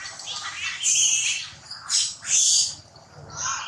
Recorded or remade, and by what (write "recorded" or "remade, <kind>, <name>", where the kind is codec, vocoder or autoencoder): recorded